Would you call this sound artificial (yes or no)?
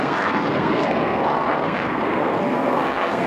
yes